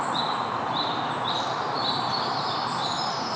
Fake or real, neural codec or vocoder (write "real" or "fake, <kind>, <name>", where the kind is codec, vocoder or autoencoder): real